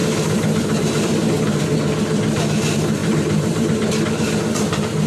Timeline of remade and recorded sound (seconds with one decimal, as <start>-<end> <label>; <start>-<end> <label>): 0.0-1.6 remade; 1.6-3.0 recorded; 3.0-3.9 remade; 3.9-5.1 recorded